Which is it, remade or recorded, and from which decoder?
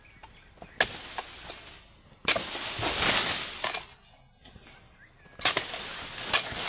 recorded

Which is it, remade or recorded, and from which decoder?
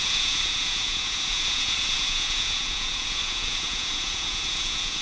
remade, vocoder, Vocos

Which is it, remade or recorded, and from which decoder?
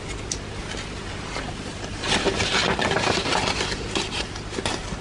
recorded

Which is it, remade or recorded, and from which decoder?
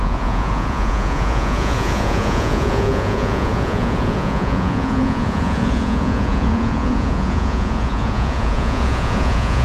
remade, vocoder, Vocos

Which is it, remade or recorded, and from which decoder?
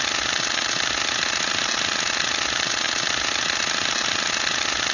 recorded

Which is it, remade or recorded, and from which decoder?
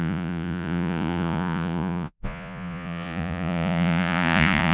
remade, vocoder, Vocos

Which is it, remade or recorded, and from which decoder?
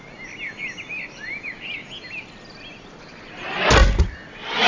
recorded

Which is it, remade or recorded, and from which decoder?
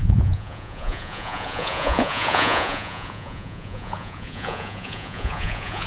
remade, vocoder, Vocos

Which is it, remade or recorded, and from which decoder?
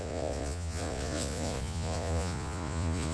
remade, vocoder, Vocos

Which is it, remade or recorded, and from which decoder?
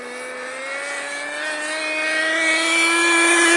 recorded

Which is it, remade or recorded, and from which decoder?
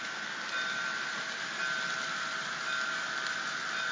recorded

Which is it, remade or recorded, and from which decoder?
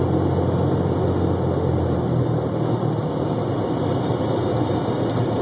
recorded